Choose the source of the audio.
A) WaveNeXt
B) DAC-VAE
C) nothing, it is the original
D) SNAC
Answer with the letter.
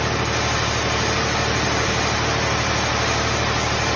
C